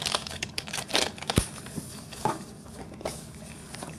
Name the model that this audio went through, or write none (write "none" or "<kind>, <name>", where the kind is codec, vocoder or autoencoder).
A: codec, DAC